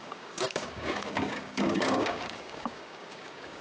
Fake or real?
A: fake